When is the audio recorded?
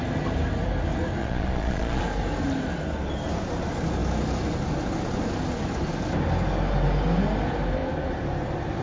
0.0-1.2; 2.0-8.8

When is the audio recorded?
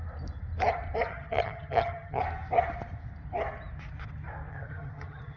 0.0-1.1; 2.2-4.5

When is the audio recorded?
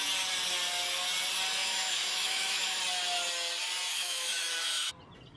0.0-1.6; 2.8-3.9; 4.9-5.4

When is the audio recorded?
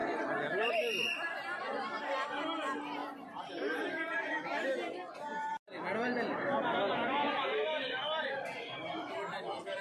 0.0-9.8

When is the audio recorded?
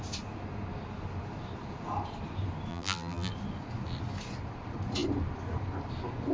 0.0-2.7; 3.3-6.3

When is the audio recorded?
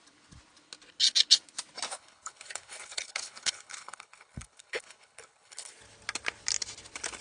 0.0-1.9; 5.7-7.2